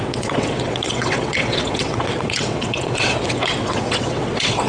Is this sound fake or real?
fake